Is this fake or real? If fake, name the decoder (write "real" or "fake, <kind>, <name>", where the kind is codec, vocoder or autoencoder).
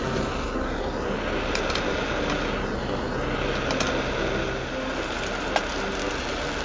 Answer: real